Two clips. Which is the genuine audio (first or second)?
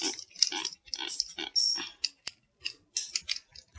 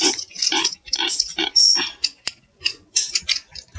first